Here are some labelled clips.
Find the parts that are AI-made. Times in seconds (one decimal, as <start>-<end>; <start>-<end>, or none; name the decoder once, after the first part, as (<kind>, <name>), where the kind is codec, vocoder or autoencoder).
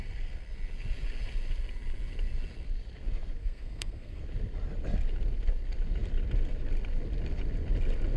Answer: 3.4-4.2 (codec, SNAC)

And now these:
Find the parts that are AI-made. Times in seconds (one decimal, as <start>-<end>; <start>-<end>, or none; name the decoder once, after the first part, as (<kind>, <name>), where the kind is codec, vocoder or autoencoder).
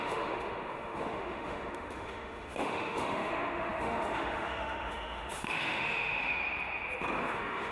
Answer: 0.0-6.4 (autoencoder, DAC-VAE); 7.2-7.7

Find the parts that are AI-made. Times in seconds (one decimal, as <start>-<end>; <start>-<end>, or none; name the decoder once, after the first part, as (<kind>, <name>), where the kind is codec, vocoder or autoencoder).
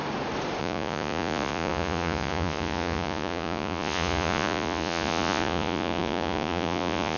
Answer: 0.6-7.2 (vocoder, Vocos)